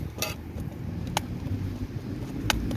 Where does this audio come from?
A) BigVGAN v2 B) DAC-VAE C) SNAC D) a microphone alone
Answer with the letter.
D